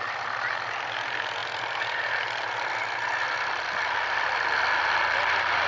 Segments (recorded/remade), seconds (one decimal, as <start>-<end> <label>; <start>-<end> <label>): 0.0-5.7 recorded